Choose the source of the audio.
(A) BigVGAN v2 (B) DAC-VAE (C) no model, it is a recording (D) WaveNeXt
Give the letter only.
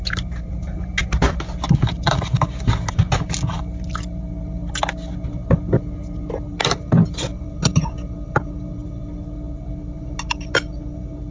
C